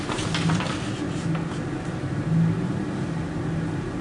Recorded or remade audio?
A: recorded